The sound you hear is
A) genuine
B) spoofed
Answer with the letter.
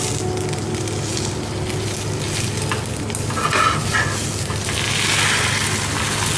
A